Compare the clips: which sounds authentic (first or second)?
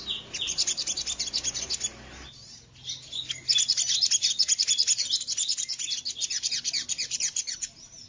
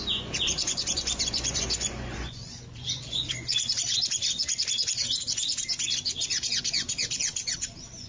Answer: first